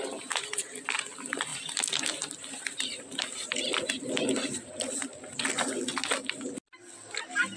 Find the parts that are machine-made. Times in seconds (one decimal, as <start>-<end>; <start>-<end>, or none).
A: none